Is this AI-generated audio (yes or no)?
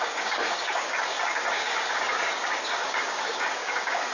yes